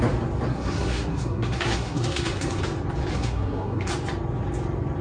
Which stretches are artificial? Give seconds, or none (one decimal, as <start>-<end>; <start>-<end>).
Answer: 0.5-2.6; 3.1-3.9